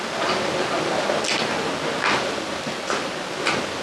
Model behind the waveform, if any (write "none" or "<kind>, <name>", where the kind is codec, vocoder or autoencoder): none